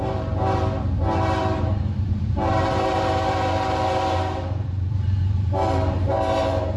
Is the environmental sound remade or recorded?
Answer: remade